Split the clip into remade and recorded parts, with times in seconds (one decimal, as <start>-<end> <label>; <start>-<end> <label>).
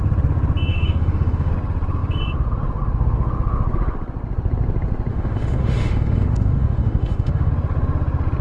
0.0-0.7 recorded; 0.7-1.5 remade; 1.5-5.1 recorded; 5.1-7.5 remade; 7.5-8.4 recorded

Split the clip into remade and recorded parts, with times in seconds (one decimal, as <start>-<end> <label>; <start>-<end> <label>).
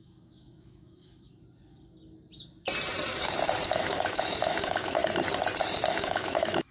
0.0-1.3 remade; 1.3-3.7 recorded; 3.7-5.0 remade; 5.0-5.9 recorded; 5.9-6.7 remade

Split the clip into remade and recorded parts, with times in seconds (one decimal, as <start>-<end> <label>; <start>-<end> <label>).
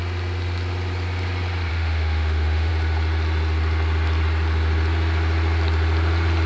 0.0-1.7 recorded; 1.7-2.7 remade; 2.7-6.5 recorded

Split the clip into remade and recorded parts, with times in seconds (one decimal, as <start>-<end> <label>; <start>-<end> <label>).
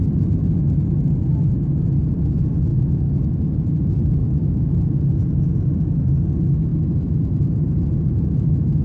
0.0-2.7 recorded; 2.7-3.3 remade; 3.3-4.2 recorded; 4.2-4.8 remade; 4.8-8.8 recorded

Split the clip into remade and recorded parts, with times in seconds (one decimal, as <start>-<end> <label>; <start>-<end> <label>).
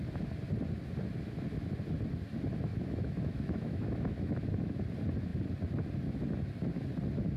0.0-2.7 recorded; 2.7-4.8 remade; 4.8-7.4 recorded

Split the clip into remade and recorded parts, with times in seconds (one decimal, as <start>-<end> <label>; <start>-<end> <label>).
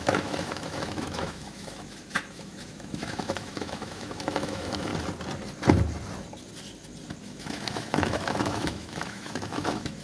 0.0-4.9 remade; 4.9-7.2 recorded; 7.2-10.0 remade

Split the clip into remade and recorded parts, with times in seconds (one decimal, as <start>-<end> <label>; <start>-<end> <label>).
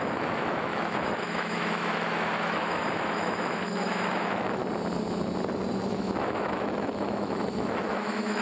0.0-4.6 remade; 4.6-5.9 recorded; 5.9-8.4 remade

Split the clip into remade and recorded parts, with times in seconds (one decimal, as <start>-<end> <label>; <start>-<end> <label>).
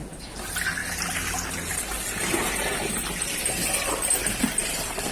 0.0-5.1 recorded